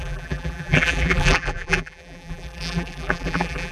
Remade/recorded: remade